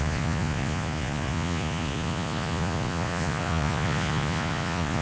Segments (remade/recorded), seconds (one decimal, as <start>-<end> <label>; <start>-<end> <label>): 0.0-5.0 remade